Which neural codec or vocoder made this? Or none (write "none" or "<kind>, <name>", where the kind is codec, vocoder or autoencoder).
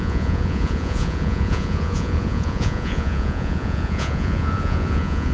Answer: vocoder, Vocos